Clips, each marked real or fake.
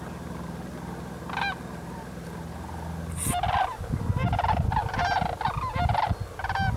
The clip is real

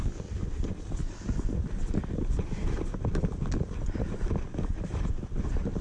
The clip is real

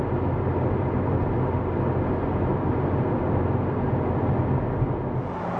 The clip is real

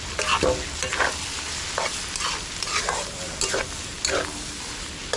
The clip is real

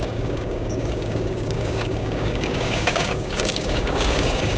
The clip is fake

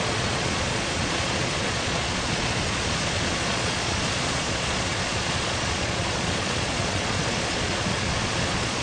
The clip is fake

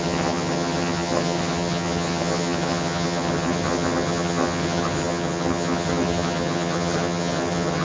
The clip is fake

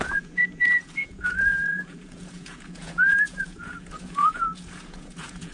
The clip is fake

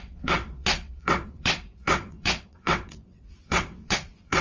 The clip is fake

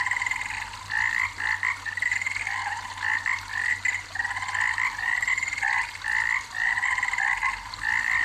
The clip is real